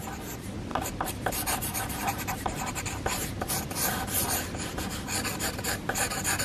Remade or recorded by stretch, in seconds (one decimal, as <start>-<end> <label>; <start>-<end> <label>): 0.0-0.7 recorded; 0.7-2.9 remade; 2.9-6.4 recorded